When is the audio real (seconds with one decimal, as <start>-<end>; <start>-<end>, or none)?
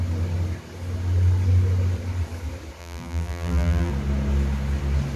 0.0-2.8; 3.9-5.2